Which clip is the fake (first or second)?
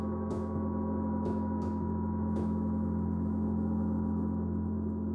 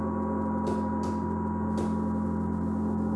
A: first